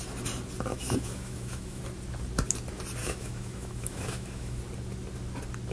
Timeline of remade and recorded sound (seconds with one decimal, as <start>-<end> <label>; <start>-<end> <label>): 0.0-0.7 recorded; 0.7-1.8 remade; 1.8-3.0 recorded; 3.0-4.6 remade; 4.6-5.7 recorded